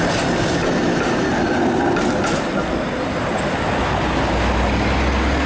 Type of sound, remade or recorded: recorded